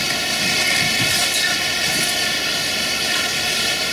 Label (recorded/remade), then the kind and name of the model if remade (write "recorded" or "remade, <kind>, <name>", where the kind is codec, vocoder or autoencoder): recorded